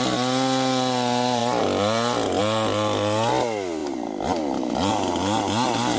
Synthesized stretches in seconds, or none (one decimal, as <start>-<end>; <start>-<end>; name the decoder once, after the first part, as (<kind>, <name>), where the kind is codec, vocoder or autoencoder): none